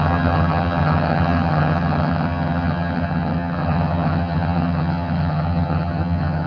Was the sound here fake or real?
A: fake